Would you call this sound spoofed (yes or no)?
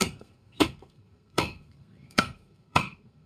yes